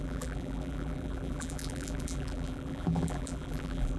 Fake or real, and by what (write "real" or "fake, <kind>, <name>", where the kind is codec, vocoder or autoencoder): fake, vocoder, BigVGAN v2